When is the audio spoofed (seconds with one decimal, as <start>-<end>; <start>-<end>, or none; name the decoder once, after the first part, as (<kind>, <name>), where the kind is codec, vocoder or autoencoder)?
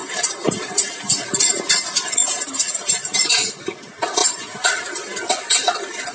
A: 0.0-1.1 (vocoder, BigVGAN v2); 2.2-3.2; 4.2-4.9